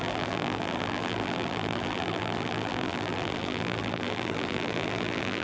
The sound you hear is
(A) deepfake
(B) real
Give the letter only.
A